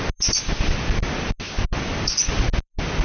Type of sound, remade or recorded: recorded